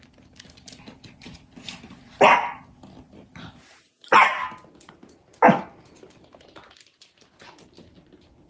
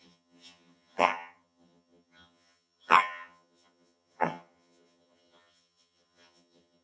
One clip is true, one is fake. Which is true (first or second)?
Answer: first